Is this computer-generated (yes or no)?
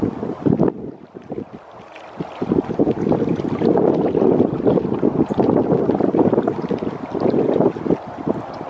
no